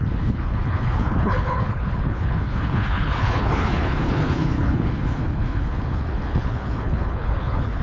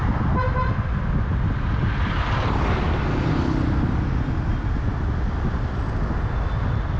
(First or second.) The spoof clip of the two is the first